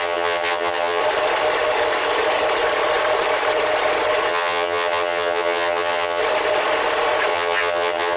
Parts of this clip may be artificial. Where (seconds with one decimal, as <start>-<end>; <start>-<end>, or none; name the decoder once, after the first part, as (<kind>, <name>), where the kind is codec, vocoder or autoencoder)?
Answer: 0.0-1.0 (vocoder, HiFi-GAN); 4.3-6.2; 7.3-8.2